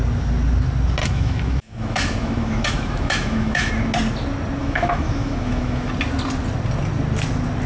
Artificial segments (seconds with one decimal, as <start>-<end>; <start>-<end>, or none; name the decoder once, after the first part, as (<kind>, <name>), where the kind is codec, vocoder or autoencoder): 1.0-3.7 (autoencoder, DAC-VAE); 4.6-5.9